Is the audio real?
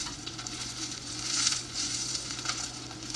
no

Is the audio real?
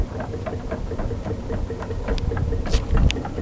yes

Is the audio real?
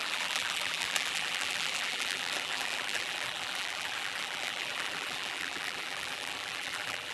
no